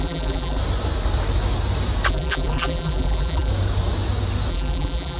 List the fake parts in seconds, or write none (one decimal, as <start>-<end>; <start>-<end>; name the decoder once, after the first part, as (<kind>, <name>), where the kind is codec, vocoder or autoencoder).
0.0-0.6 (vocoder, BigVGAN v2); 2.1-3.5; 4.5-5.2